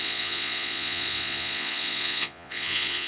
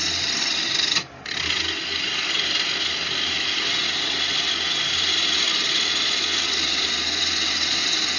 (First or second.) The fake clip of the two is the first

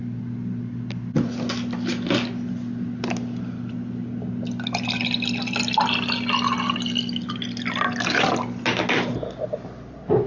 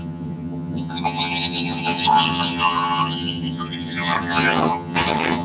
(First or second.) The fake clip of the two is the second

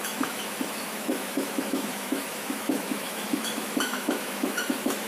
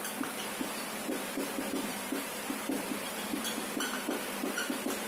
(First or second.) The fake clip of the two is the first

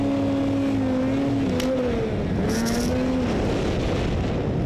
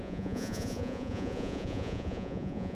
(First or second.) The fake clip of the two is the second